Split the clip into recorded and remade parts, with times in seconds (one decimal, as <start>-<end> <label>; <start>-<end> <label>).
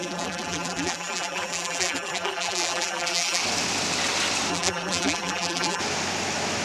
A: 0.0-3.4 remade; 3.4-4.5 recorded; 4.5-5.8 remade; 5.8-6.6 recorded